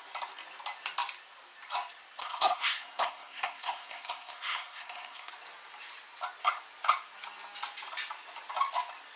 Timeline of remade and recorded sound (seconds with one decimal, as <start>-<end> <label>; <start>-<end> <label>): 0.0-2.2 recorded; 2.2-5.3 remade; 5.3-9.2 recorded